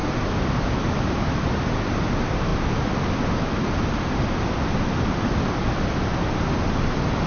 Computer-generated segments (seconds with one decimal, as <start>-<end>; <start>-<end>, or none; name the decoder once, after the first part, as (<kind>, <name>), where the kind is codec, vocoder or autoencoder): none